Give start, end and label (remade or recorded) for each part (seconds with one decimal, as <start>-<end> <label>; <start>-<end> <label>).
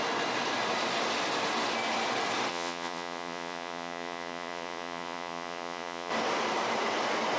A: 0.0-2.5 recorded; 2.5-6.1 remade; 6.1-7.4 recorded